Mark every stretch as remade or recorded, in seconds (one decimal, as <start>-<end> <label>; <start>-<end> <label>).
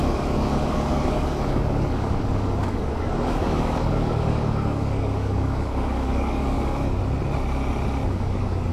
0.0-7.0 remade; 7.0-8.1 recorded; 8.1-8.7 remade